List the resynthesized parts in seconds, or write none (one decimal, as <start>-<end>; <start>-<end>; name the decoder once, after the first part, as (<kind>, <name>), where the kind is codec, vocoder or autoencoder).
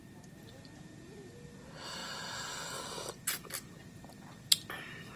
none